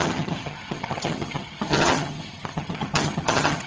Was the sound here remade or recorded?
remade